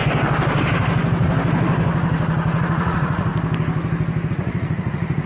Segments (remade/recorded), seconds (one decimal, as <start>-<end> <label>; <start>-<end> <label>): 0.0-2.6 recorded; 2.6-3.3 remade; 3.3-4.3 recorded; 4.3-5.3 remade